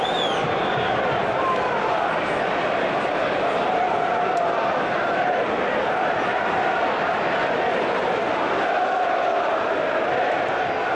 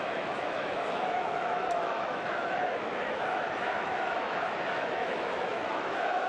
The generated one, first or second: second